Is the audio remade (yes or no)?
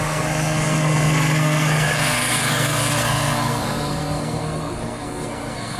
yes